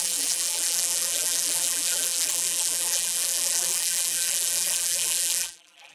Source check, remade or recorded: remade